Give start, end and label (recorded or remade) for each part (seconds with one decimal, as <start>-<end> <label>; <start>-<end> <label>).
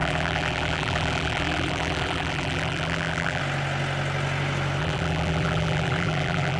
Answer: 0.0-3.4 remade; 3.4-4.8 recorded; 4.8-6.6 remade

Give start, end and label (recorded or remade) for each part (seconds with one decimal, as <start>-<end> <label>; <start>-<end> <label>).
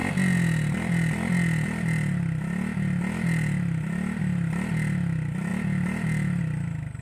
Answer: 0.0-7.0 recorded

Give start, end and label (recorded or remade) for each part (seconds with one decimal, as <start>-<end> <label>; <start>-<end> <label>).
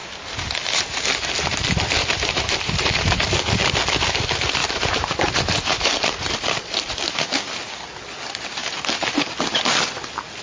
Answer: 0.0-1.0 remade; 1.0-2.0 recorded; 2.0-3.2 remade; 3.2-4.6 recorded; 4.6-6.9 remade; 6.9-8.6 recorded; 8.6-9.3 remade; 9.3-10.4 recorded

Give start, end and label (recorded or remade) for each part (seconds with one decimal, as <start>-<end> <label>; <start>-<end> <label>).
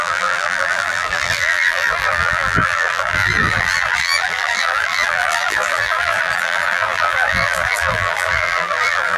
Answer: 0.0-9.2 remade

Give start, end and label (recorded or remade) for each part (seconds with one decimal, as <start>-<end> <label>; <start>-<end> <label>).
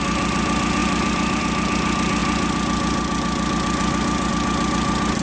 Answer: 0.0-0.8 recorded; 0.8-1.4 remade; 1.4-2.2 recorded; 2.2-4.3 remade; 4.3-5.2 recorded